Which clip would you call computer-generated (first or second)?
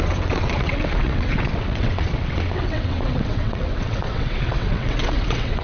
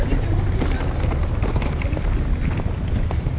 first